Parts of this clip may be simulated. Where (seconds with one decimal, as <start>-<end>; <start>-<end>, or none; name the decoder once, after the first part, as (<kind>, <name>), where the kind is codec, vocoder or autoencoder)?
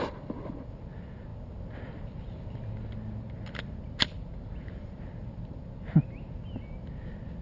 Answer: none